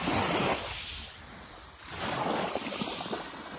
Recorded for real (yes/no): yes